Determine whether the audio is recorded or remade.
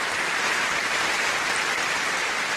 remade